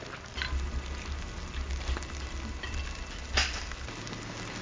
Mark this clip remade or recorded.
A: recorded